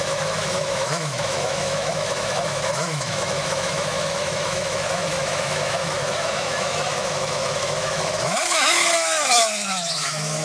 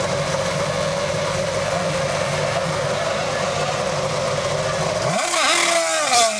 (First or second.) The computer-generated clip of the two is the first